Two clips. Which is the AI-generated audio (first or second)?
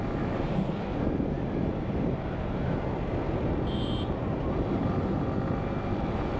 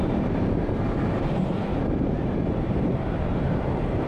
second